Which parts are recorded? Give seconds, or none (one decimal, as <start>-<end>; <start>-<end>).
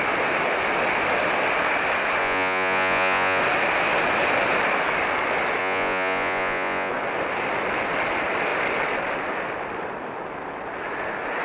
0.0-2.2; 3.4-5.6; 6.9-11.4